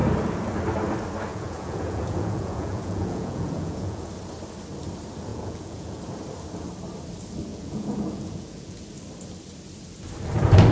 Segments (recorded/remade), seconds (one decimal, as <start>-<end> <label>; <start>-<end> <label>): 0.0-1.3 recorded; 1.3-4.1 remade; 4.1-5.3 recorded; 5.3-6.0 remade; 6.0-7.5 recorded; 7.5-8.8 remade; 8.8-10.7 recorded